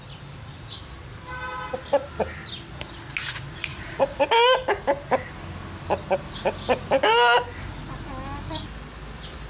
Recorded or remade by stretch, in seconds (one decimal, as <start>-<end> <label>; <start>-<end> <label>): 0.0-3.7 recorded; 3.7-4.2 remade; 4.2-9.5 recorded